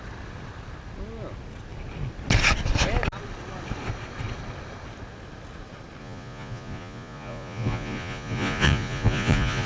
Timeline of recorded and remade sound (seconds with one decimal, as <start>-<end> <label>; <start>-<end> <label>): 0.0-6.0 recorded; 6.0-9.7 remade